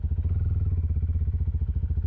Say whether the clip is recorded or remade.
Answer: recorded